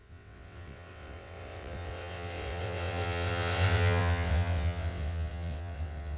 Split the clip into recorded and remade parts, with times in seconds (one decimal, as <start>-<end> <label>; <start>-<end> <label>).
0.0-6.2 remade